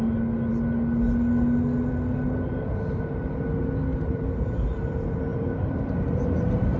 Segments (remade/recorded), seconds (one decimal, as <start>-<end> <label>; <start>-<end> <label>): 0.0-3.9 recorded; 3.9-4.8 remade; 4.8-5.3 recorded; 5.3-6.8 remade